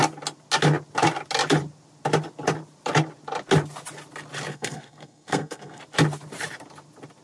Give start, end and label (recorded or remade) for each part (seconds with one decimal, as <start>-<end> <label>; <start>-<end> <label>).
0.0-4.5 recorded; 4.5-5.8 remade; 5.8-7.2 recorded